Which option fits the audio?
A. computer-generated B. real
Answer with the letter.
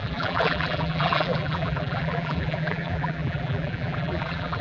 A